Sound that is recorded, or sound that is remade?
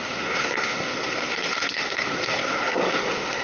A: remade